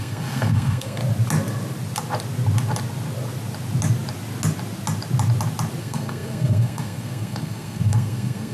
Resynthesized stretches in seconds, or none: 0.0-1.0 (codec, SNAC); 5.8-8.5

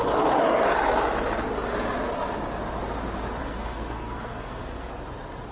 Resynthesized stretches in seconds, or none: 3.4-4.9 (codec, SNAC)

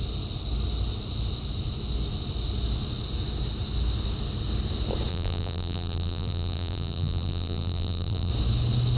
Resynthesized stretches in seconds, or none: 5.1-8.3 (vocoder, BigVGAN v2)

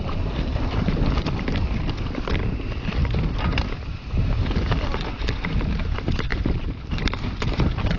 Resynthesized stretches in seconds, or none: none

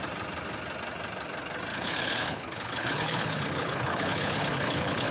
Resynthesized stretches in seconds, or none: 1.7-5.1 (codec, HILCodec)